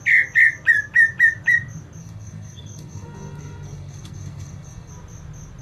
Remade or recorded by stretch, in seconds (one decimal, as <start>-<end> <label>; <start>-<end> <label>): 0.0-2.0 recorded; 2.0-4.9 remade; 4.9-5.6 recorded